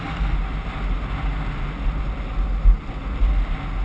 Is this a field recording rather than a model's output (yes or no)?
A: yes